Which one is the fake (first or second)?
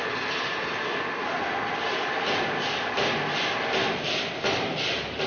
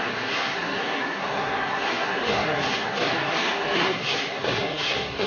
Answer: second